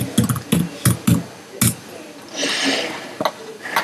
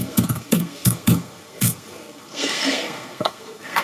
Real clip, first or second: first